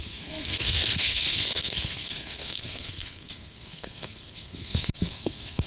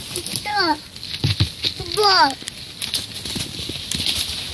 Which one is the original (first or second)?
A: second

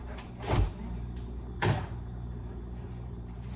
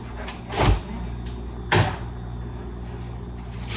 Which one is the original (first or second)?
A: second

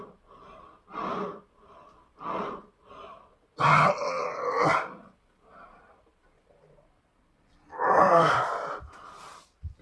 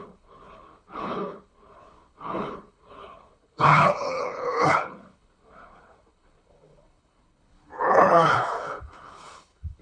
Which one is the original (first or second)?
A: first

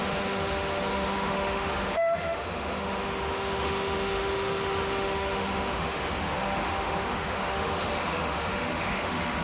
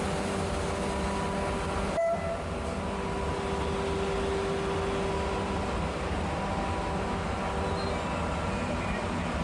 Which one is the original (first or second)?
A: second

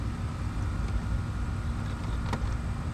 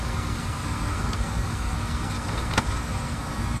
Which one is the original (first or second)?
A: first